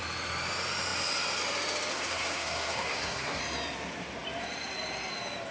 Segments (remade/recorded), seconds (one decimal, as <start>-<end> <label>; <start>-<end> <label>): 0.0-1.9 recorded; 1.9-3.4 remade; 3.4-5.5 recorded